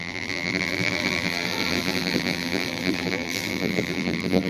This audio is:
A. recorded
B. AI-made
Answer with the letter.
B